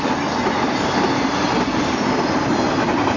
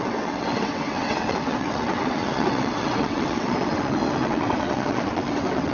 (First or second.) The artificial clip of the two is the second